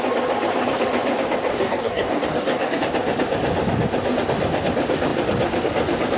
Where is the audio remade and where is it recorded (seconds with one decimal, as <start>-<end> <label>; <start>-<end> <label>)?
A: 0.0-1.5 recorded; 1.5-2.8 remade; 2.8-6.2 recorded